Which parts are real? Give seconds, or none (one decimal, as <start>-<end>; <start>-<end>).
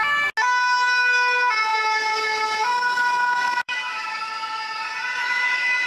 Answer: 0.0-1.7; 4.2-5.2